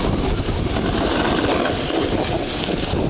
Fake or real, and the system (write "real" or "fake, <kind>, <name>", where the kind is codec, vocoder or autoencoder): real